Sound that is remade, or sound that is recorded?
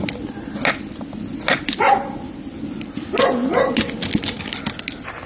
recorded